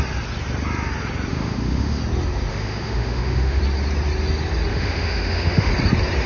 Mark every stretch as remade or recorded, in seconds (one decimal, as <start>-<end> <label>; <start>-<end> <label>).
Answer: 0.0-1.3 recorded; 1.3-2.0 remade; 2.0-2.5 recorded; 2.5-3.6 remade; 3.6-4.7 recorded; 4.7-5.7 remade; 5.7-6.3 recorded